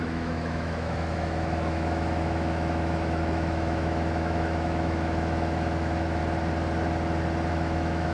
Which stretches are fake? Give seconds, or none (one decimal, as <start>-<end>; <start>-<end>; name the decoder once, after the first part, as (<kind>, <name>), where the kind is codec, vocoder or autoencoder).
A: 0.0-6.2 (autoencoder, DAC-VAE); 7.5-8.1